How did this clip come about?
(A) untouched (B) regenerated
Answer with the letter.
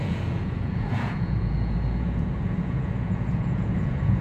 B